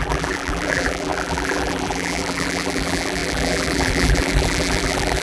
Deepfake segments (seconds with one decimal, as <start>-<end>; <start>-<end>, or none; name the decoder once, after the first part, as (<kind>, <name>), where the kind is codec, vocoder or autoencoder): 0.0-5.2 (vocoder, BigVGAN v2)